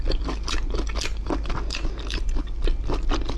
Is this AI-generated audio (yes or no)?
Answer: no